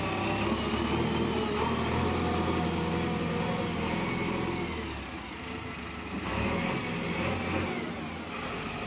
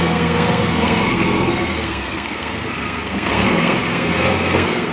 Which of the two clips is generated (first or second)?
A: second